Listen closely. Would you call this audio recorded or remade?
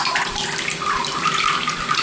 remade